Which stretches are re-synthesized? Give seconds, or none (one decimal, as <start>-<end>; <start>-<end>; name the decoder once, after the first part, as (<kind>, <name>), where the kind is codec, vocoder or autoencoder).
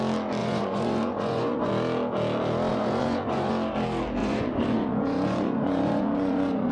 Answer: 0.4-1.7 (vocoder, Vocos); 2.7-3.5; 4.2-6.7